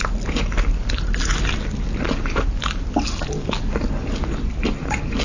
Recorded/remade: recorded